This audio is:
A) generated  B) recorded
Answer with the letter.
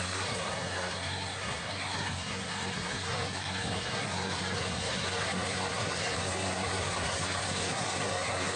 A